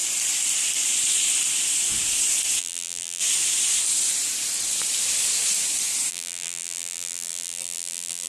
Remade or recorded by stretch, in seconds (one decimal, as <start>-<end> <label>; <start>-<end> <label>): 0.0-2.6 recorded; 2.6-3.2 remade; 3.2-6.1 recorded; 6.1-8.3 remade

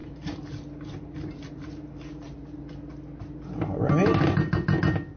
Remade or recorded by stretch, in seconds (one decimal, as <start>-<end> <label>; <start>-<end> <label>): 0.0-2.6 remade; 2.6-5.2 recorded

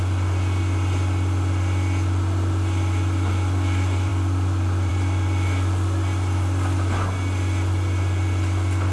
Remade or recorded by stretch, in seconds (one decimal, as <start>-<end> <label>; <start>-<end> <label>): 0.0-8.9 recorded

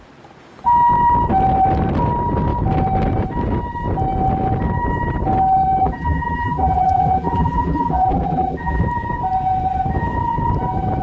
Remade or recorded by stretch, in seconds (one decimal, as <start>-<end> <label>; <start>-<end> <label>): 0.0-5.8 recorded; 5.8-8.8 remade; 8.8-11.0 recorded